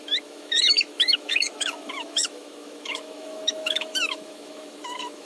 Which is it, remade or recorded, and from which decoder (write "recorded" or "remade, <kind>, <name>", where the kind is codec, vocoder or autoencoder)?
remade, autoencoder, DAC-VAE